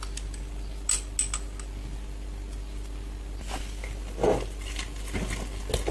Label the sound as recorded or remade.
recorded